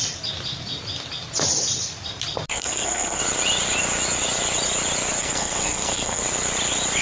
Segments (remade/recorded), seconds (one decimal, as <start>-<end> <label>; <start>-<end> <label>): 0.0-2.5 recorded; 2.5-3.2 remade; 3.2-5.2 recorded; 5.2-6.2 remade; 6.2-7.0 recorded